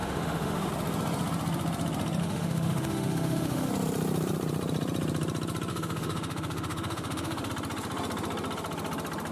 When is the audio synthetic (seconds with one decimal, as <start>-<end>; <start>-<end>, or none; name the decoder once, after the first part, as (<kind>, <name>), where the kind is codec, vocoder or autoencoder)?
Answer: 0.0-0.7 (autoencoder, DAC-VAE); 2.2-3.7; 5.7-7.5